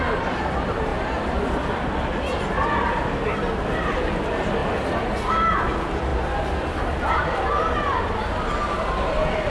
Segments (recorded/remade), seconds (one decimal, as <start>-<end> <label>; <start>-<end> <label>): 0.0-9.5 recorded